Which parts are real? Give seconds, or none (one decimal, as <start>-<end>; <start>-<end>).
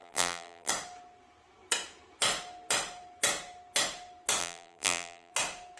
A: 0.7-4.4; 5.3-5.8